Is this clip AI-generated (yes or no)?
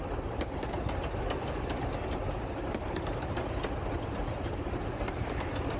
no